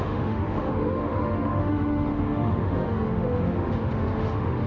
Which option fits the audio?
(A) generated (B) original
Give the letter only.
A